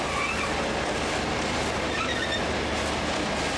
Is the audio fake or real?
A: real